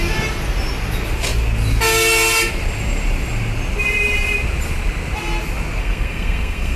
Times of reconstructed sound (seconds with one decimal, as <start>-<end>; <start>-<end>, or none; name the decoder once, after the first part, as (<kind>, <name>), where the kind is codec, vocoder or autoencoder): 5.8-6.8 (codec, SNAC)